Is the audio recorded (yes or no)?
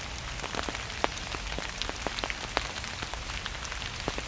yes